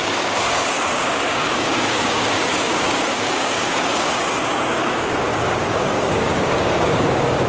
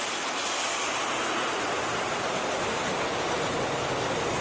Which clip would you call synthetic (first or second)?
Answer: first